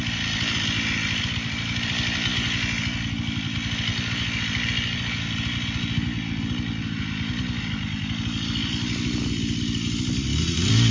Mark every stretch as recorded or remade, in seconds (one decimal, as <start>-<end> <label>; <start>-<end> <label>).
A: 0.0-2.3 remade; 2.3-2.8 recorded; 2.8-3.9 remade; 3.9-7.6 recorded; 7.6-10.9 remade